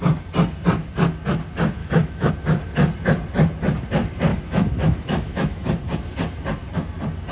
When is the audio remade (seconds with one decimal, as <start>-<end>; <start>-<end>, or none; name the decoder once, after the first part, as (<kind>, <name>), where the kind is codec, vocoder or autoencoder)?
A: 1.8-2.3 (autoencoder, DAC-VAE); 4.3-5.8